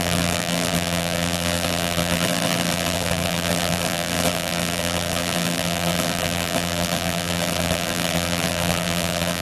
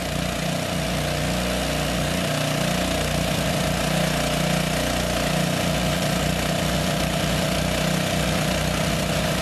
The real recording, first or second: second